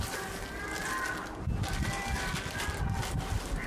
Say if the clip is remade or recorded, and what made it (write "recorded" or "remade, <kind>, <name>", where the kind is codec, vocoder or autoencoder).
recorded